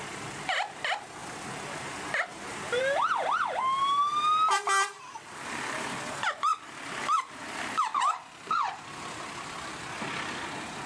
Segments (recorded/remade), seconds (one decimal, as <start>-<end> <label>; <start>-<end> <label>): 0.0-6.5 recorded; 6.5-9.8 remade; 9.8-10.9 recorded